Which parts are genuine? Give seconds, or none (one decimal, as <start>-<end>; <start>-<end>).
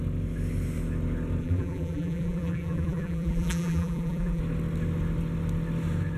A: 0.0-1.4; 4.4-6.2